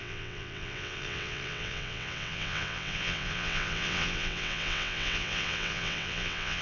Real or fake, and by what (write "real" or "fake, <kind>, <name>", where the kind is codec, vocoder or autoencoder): fake, vocoder, WaveNeXt